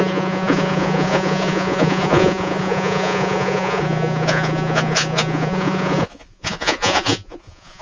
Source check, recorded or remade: remade